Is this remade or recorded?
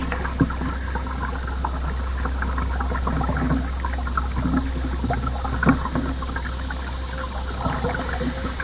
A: recorded